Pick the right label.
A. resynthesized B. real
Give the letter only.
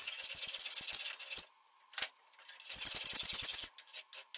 B